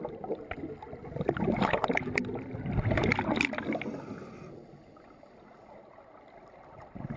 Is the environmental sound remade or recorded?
recorded